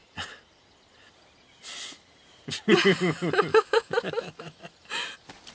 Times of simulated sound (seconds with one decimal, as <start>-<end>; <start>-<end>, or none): 3.5-4.6